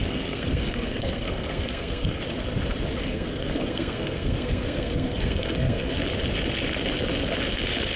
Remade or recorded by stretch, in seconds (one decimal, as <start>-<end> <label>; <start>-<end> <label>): 0.0-2.2 remade; 2.2-3.0 recorded; 3.0-6.0 remade; 6.0-8.0 recorded

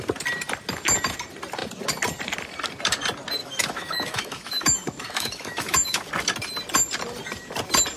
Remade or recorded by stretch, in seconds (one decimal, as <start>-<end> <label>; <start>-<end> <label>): 0.0-3.4 recorded; 3.4-6.1 remade; 6.1-8.0 recorded